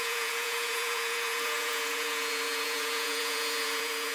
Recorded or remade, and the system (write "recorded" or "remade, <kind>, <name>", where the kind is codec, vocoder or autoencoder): remade, vocoder, Vocos